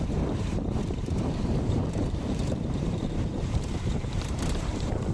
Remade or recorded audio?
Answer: remade